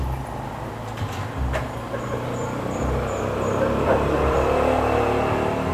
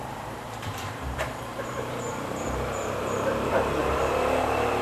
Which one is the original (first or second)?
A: first